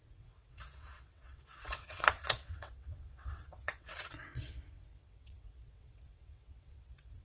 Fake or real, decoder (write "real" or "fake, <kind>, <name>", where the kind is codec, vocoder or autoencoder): fake, vocoder, WaveNeXt